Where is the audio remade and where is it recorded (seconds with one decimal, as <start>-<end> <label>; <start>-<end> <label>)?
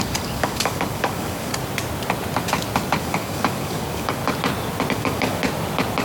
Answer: 0.0-1.5 remade; 1.5-3.0 recorded; 3.0-4.2 remade; 4.2-4.9 recorded; 4.9-5.4 remade; 5.4-6.0 recorded